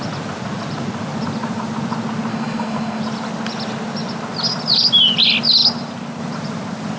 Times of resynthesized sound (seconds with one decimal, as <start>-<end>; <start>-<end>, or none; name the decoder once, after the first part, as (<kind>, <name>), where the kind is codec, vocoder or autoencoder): 2.3-3.0 (codec, SNAC)